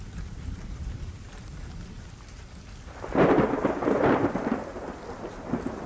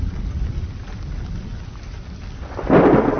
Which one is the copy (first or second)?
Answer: first